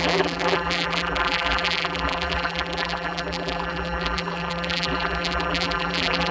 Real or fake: fake